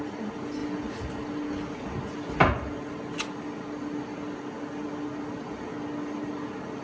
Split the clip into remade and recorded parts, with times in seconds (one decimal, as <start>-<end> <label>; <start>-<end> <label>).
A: 0.0-6.8 recorded

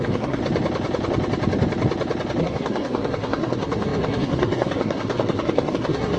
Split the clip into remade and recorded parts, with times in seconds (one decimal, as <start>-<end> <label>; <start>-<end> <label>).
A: 0.0-0.4 remade; 0.4-2.4 recorded; 2.4-6.2 remade

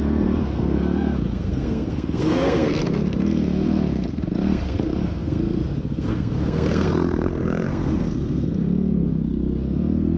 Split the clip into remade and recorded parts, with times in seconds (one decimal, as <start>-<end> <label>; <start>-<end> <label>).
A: 0.0-10.2 remade

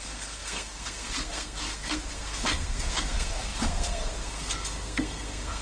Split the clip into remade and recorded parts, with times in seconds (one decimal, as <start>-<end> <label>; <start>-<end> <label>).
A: 0.0-5.6 remade

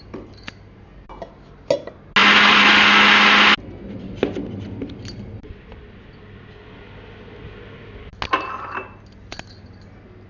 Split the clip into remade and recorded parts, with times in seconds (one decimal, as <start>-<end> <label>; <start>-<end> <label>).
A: 0.0-10.3 recorded

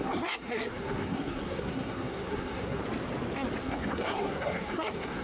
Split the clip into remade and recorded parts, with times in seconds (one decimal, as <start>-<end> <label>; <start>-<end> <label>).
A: 0.0-2.8 remade; 2.8-3.6 recorded; 3.6-5.2 remade

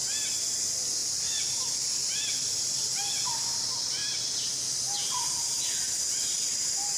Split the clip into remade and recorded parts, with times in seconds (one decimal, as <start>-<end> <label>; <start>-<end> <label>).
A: 0.0-7.0 recorded